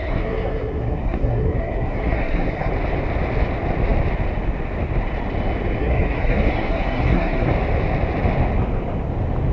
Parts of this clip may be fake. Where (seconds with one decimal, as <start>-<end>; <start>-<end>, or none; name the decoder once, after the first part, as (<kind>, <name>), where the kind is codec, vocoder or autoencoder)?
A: 0.0-2.7 (codec, SNAC); 5.8-7.5